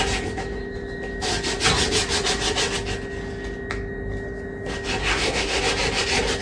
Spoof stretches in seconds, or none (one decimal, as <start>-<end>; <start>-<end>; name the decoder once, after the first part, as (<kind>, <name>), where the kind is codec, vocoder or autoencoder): 5.0-5.6 (codec, SNAC)